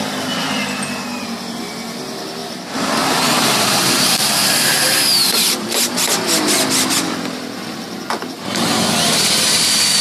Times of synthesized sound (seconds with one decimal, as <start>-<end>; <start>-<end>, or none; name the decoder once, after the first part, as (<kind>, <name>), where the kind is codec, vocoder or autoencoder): 2.4-5.8 (vocoder, BigVGAN v2)